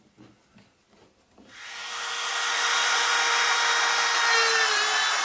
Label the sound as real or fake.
real